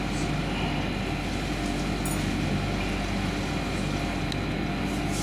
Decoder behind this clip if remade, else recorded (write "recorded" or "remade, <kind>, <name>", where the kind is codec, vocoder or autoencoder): recorded